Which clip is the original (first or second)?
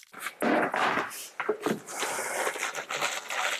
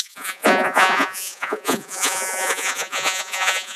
first